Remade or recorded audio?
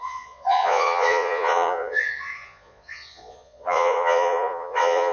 remade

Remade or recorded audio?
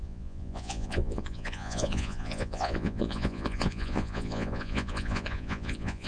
remade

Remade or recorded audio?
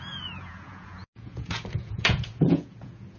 remade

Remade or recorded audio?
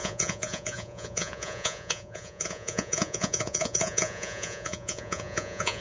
remade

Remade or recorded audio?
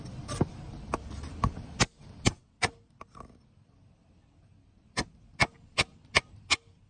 recorded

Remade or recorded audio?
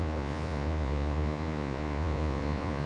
remade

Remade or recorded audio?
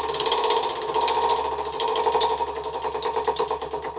recorded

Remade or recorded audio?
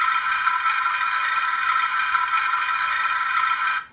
recorded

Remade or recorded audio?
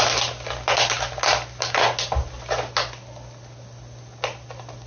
recorded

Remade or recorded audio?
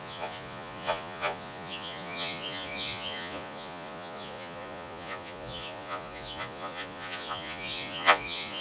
remade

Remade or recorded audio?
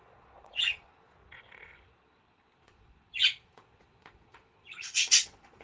remade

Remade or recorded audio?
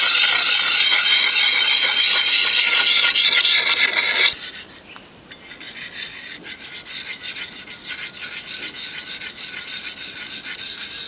recorded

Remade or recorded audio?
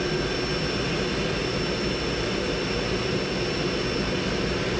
recorded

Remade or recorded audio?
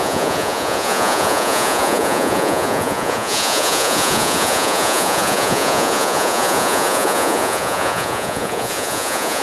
remade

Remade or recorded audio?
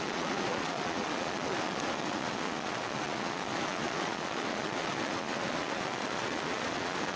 remade